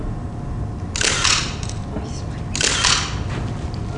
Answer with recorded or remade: recorded